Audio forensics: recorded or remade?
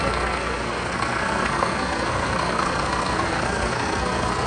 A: remade